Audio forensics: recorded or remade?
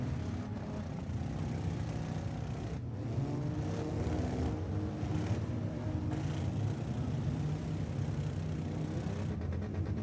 recorded